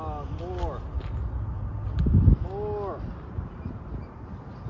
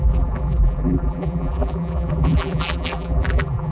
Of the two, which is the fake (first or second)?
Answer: second